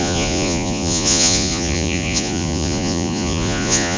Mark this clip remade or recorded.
remade